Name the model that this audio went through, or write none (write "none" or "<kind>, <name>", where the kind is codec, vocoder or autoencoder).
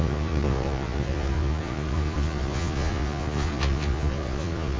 vocoder, Vocos